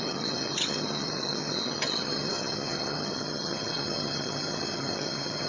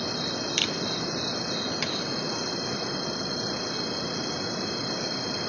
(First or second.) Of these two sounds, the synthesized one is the first